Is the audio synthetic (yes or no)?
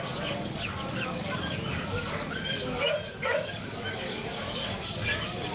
yes